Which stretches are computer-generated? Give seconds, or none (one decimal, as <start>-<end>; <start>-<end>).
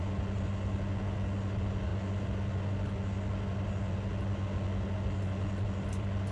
none